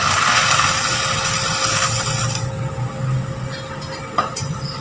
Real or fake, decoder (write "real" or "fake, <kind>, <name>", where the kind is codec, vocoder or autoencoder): real